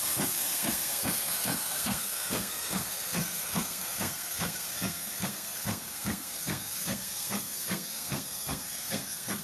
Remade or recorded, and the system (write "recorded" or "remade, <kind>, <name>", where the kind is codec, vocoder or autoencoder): remade, codec, SNAC